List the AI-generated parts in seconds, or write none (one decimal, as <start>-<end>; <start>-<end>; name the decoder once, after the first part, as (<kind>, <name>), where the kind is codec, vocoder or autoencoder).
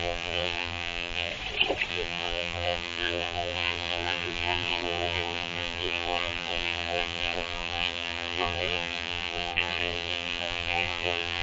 0.0-1.3 (vocoder, BigVGAN v2); 1.9-11.4